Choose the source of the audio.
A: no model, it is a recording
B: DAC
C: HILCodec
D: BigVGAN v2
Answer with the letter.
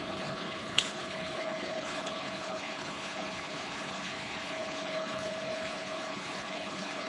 C